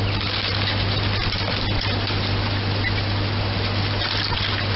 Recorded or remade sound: remade